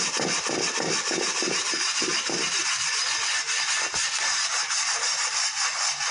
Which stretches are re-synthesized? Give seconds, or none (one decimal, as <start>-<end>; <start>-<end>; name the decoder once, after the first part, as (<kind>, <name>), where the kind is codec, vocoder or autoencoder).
none